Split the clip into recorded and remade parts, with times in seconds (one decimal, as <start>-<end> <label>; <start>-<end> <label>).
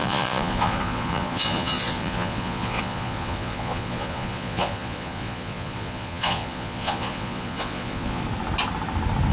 0.0-8.2 remade; 8.2-9.3 recorded